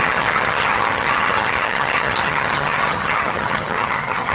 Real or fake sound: fake